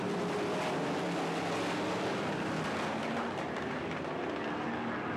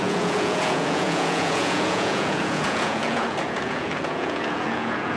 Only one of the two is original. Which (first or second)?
first